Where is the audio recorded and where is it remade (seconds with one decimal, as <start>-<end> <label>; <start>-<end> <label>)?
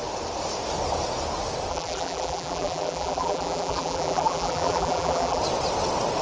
0.0-1.7 recorded; 1.7-5.4 remade; 5.4-6.2 recorded